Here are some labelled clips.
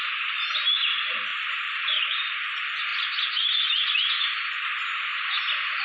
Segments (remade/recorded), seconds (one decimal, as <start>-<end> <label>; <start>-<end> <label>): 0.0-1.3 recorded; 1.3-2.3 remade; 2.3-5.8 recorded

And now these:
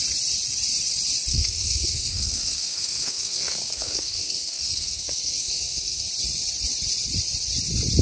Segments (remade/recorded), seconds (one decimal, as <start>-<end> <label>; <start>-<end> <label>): 0.0-1.3 recorded; 1.3-6.1 remade; 6.1-8.0 recorded

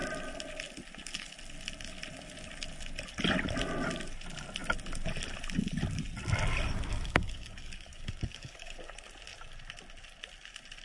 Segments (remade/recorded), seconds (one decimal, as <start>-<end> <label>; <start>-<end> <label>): 0.0-6.9 recorded; 6.9-8.9 remade; 8.9-10.8 recorded

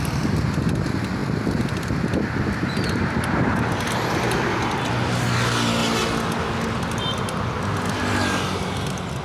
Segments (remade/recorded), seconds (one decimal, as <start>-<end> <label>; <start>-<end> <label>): 0.0-9.2 recorded

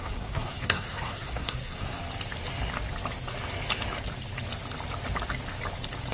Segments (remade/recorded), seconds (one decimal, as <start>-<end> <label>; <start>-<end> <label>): 0.0-2.0 remade; 2.0-6.1 recorded

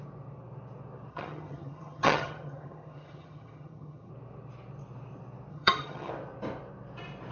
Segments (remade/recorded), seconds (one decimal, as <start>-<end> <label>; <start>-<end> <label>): 0.0-1.1 recorded; 1.1-4.1 remade; 4.1-5.5 recorded; 5.5-6.1 remade; 6.1-7.3 recorded